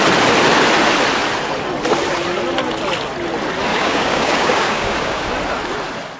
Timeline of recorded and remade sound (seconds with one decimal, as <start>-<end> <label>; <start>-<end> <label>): 0.0-3.7 recorded; 3.7-5.3 remade; 5.3-6.2 recorded